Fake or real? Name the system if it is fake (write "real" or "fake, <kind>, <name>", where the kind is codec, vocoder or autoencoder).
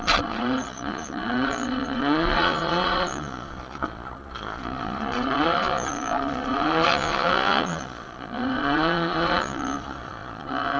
fake, vocoder, Vocos